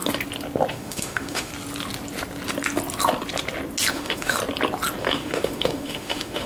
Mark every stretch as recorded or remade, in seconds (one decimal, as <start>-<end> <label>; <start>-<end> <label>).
0.0-0.7 recorded; 0.7-1.5 remade; 1.5-3.9 recorded; 3.9-4.4 remade; 4.4-5.0 recorded; 5.0-6.5 remade